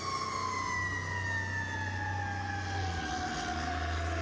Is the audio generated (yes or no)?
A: no